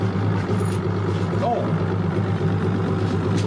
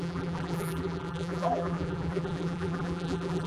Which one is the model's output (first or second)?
second